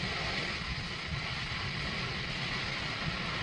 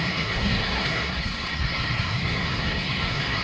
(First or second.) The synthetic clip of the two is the second